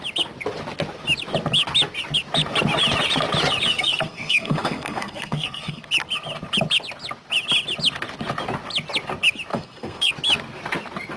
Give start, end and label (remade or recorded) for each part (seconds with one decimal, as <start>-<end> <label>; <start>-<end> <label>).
0.0-3.7 recorded; 3.7-5.8 remade; 5.8-9.5 recorded; 9.5-10.1 remade; 10.1-11.2 recorded